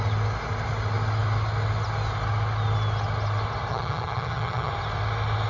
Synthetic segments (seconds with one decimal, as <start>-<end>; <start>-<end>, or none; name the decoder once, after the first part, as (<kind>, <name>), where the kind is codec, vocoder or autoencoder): 3.7-4.7 (vocoder, HiFi-GAN)

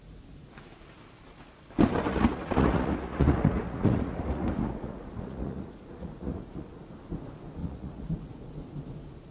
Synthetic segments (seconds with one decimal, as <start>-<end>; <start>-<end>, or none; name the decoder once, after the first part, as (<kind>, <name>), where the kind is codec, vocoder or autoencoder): 2.1-6.9 (vocoder, Vocos); 7.6-8.5